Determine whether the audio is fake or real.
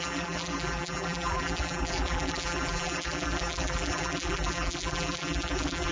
fake